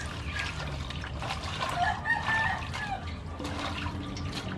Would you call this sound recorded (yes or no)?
yes